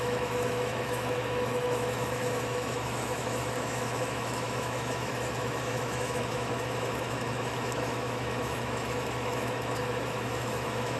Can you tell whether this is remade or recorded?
remade